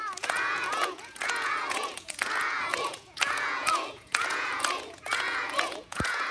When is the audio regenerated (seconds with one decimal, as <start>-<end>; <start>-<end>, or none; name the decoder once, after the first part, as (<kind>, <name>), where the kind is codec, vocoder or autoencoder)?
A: 0.0-6.3 (vocoder, Vocos)